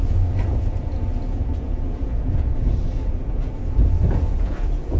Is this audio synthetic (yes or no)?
yes